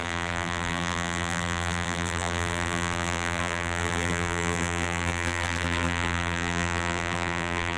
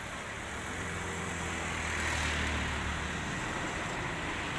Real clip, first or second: second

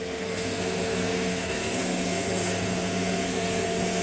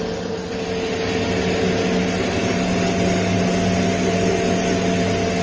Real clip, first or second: second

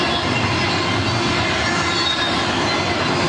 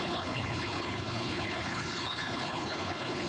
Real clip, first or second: first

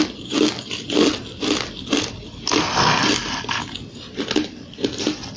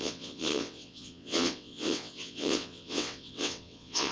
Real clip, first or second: first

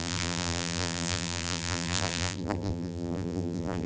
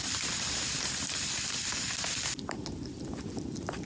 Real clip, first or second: second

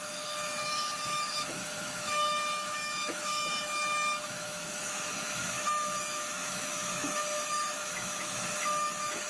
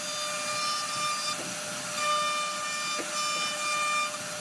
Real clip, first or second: second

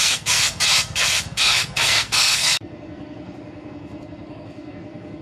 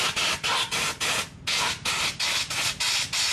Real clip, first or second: second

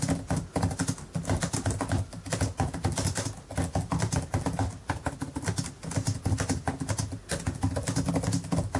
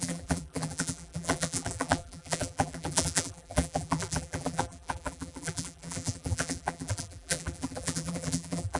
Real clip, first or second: first